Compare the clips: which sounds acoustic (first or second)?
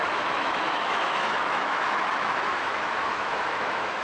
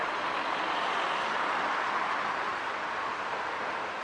second